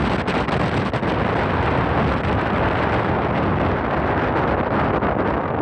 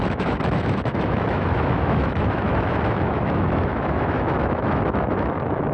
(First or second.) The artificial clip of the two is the second